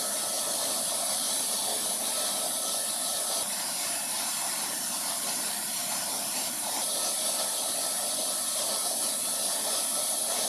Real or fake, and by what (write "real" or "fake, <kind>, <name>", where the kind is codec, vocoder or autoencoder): fake, vocoder, BigVGAN v2